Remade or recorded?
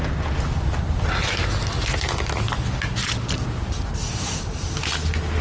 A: recorded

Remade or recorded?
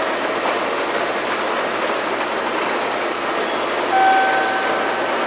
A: recorded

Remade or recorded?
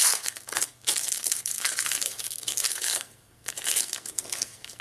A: remade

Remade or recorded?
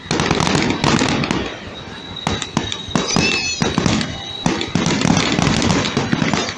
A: recorded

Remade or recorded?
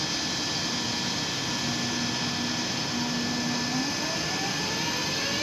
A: recorded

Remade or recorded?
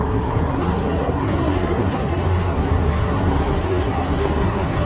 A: remade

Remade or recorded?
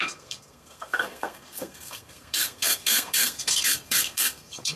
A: remade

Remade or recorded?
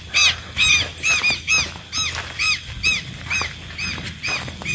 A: recorded